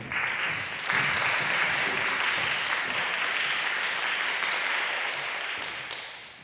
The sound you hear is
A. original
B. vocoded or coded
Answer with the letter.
A